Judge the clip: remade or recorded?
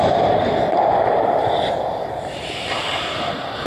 remade